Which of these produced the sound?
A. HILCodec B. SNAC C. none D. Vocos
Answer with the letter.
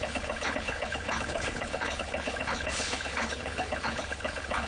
A